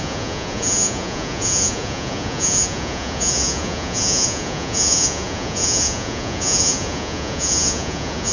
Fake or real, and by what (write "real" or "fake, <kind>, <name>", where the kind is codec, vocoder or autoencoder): fake, vocoder, Vocos